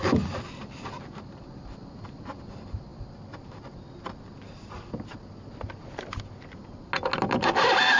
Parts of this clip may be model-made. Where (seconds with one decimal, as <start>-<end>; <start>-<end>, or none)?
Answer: none